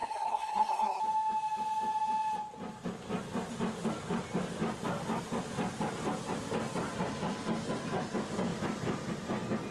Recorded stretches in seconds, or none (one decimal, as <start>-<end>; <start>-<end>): 1.0-9.7